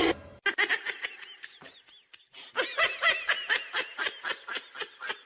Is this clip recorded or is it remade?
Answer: recorded